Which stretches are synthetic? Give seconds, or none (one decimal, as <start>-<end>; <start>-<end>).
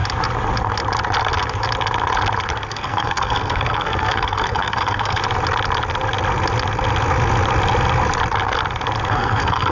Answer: 2.7-5.2; 9.1-9.7